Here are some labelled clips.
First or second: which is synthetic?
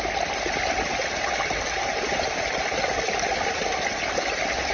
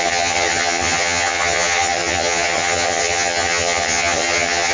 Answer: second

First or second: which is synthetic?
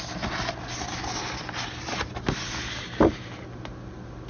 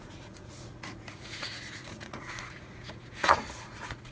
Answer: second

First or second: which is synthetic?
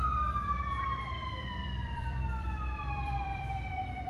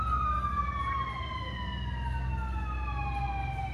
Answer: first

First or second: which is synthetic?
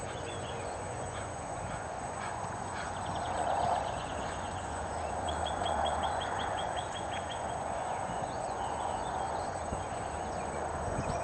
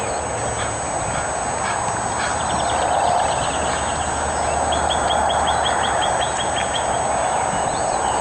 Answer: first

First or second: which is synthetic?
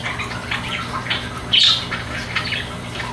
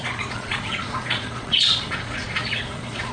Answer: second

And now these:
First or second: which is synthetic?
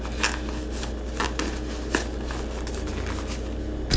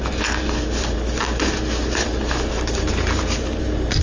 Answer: second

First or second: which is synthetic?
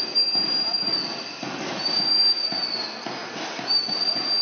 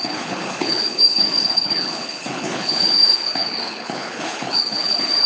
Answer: second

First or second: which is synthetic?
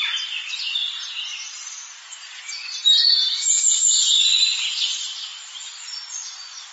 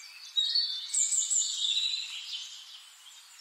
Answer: first